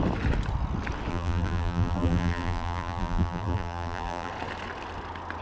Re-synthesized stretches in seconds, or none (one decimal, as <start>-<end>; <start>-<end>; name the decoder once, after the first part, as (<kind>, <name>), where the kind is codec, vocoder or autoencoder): 1.1-4.3 (vocoder, BigVGAN v2)